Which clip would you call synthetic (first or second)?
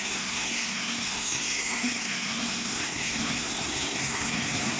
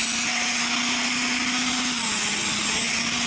first